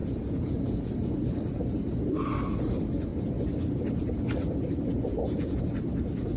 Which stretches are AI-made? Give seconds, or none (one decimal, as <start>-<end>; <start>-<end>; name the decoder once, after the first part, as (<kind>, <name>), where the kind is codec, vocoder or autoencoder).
0.0-0.9 (vocoder, Vocos); 5.1-5.6